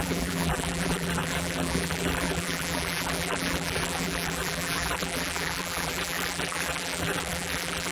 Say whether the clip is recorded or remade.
remade